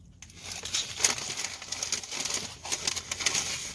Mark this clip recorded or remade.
recorded